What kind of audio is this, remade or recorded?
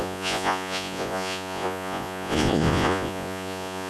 remade